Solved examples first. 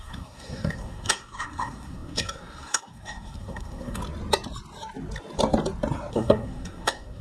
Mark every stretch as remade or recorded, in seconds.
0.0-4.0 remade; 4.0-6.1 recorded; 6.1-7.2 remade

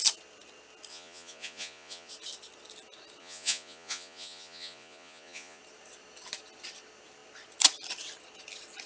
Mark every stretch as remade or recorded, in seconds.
0.0-0.9 recorded; 0.9-2.1 remade; 2.1-3.2 recorded; 3.2-5.6 remade; 5.6-8.9 recorded

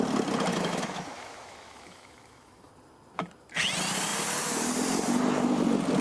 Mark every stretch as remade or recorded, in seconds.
0.0-0.5 recorded; 0.5-2.7 remade; 2.7-6.0 recorded